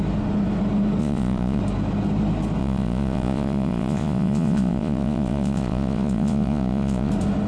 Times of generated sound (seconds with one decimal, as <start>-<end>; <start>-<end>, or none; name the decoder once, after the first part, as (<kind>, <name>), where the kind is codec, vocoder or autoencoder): 1.0-1.6 (vocoder, Vocos); 2.6-7.1